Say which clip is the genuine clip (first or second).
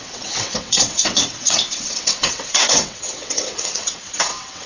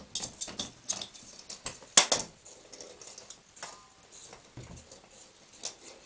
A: second